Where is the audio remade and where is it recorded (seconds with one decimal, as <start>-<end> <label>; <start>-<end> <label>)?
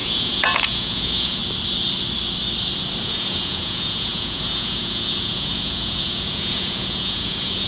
0.0-1.4 remade; 1.4-3.0 recorded; 3.0-7.7 remade